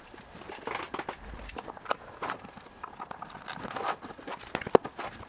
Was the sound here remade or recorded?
recorded